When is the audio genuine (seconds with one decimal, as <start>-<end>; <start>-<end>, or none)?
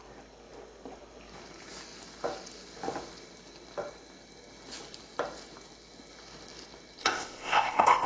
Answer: 0.0-7.0